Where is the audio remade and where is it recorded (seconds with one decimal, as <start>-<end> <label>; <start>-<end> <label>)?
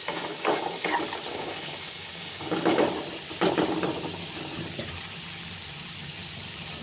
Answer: 0.0-0.9 remade; 0.9-1.3 recorded; 1.3-2.8 remade; 2.8-6.8 recorded